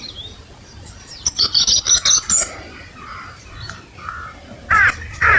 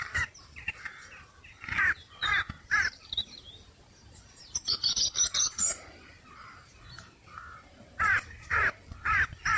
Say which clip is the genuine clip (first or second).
first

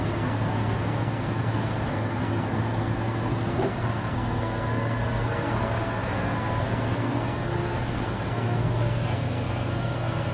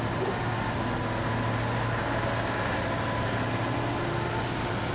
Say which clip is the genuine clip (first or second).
second